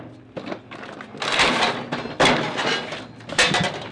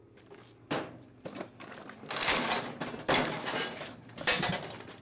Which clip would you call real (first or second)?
first